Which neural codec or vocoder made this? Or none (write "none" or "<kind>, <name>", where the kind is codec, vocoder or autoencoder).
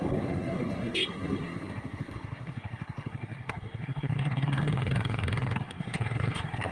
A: codec, SNAC